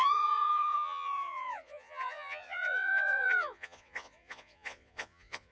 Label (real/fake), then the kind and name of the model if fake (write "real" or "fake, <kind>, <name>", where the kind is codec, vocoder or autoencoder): fake, vocoder, Vocos